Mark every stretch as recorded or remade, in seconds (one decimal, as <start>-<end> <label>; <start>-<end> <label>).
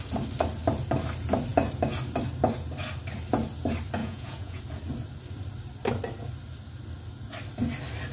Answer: 0.0-4.0 recorded; 4.0-4.6 remade; 4.6-8.1 recorded